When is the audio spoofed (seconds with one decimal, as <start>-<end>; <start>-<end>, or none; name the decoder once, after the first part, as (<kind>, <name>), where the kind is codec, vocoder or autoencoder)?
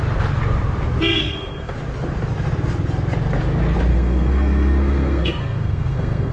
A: 1.1-1.7 (codec, SNAC); 3.9-6.3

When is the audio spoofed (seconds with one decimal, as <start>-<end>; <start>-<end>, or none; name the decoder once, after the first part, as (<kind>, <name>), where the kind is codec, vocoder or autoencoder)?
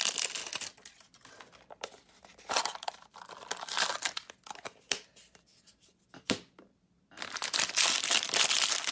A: none